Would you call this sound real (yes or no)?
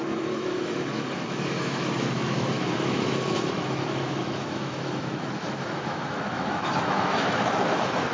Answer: no